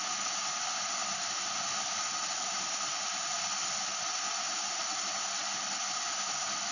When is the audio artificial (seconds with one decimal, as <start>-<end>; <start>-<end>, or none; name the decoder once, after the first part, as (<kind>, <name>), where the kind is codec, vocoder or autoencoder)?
none